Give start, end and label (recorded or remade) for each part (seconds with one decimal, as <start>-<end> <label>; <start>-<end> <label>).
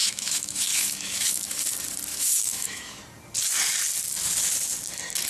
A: 0.0-1.6 remade; 1.6-2.1 recorded; 2.1-3.0 remade; 3.0-5.3 recorded